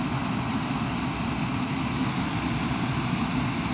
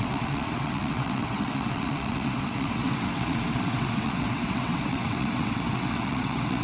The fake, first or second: second